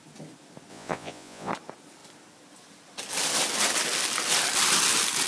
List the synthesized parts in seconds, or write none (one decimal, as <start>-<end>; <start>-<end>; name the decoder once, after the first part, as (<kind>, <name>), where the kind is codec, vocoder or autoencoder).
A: 0.7-1.5 (vocoder, Vocos)